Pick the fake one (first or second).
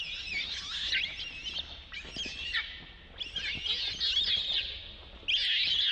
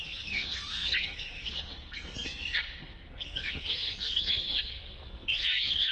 second